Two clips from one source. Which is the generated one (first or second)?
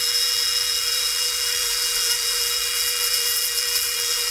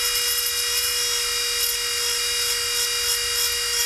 first